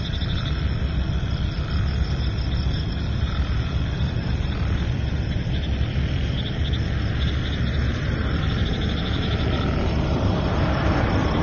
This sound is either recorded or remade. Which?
recorded